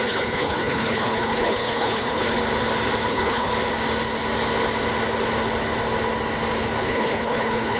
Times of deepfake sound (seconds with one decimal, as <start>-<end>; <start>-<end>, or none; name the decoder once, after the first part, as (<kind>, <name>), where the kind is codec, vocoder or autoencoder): 0.0-2.4 (codec, HILCodec); 3.1-3.5; 6.8-7.8